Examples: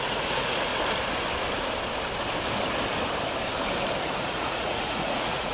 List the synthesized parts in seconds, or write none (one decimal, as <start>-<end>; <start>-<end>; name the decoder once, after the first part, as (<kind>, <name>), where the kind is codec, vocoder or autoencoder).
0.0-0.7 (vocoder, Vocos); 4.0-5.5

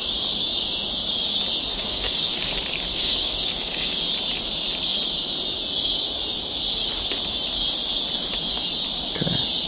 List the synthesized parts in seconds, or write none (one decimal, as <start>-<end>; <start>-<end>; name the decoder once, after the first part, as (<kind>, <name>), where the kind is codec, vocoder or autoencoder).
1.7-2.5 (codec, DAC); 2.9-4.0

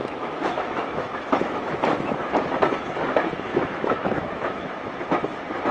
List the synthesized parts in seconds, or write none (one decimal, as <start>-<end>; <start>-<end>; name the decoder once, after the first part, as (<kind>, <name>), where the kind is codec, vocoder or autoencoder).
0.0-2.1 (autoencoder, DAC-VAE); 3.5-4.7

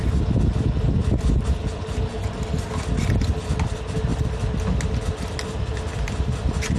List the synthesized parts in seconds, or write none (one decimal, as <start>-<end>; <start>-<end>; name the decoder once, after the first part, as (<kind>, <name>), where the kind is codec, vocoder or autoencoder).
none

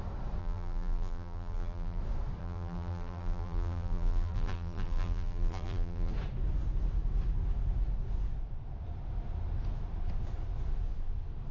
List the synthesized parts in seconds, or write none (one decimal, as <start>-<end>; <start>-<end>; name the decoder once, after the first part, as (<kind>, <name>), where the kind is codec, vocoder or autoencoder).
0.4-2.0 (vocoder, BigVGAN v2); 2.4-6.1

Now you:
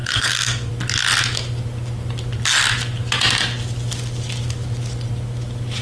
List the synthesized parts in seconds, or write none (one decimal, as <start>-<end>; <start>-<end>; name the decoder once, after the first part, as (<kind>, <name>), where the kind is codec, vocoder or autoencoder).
0.0-0.7 (codec, SNAC)

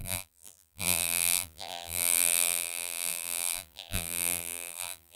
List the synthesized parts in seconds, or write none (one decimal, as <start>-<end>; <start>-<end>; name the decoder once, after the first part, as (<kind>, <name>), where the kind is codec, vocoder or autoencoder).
0.0-5.2 (vocoder, BigVGAN v2)